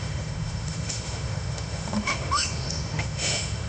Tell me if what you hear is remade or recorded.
remade